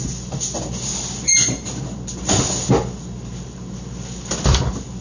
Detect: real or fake real